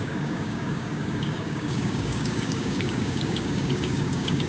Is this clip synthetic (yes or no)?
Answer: yes